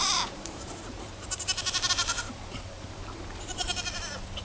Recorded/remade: remade